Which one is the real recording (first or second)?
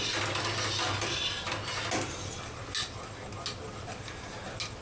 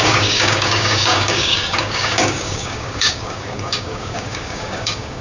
first